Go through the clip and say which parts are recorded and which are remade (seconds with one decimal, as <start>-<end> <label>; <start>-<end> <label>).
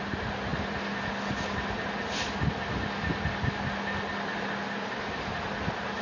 0.0-6.0 recorded